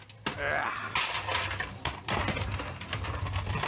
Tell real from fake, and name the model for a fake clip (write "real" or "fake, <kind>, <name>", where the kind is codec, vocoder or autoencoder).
real